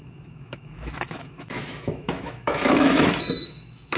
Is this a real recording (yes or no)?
no